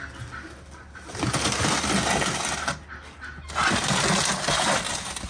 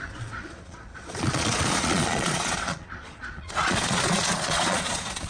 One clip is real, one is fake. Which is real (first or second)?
first